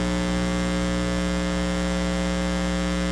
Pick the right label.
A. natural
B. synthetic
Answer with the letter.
A